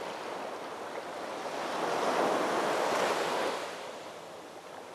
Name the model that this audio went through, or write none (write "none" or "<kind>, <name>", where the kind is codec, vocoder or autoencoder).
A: none